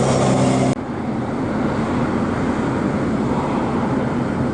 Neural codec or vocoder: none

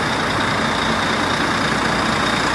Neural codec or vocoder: none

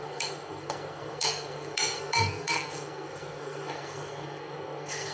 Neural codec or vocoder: codec, SNAC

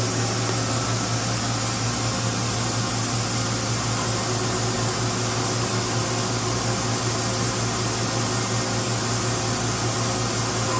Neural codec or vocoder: none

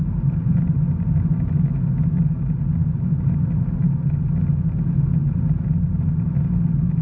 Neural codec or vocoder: none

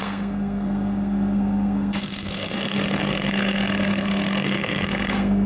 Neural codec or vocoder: codec, SNAC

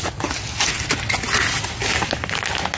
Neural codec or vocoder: none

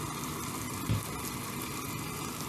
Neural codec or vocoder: none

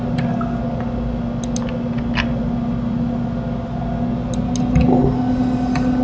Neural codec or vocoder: none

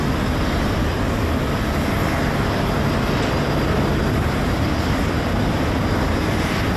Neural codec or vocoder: none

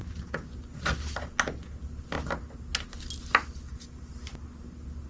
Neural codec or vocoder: none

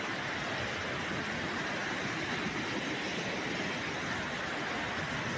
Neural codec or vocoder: none